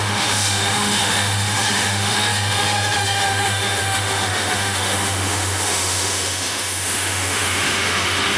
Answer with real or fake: fake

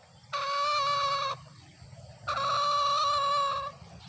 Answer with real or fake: real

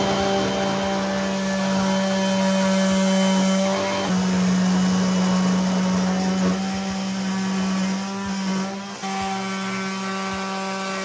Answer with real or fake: real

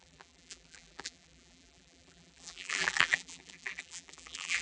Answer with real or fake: fake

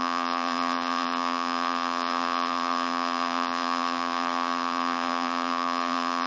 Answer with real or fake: fake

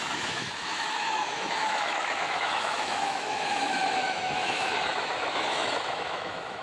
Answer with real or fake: fake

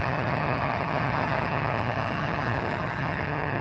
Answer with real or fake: fake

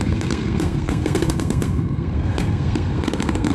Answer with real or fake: fake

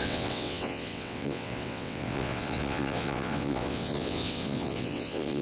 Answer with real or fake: fake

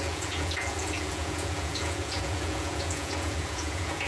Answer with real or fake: fake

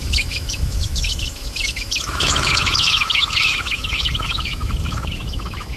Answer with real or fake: fake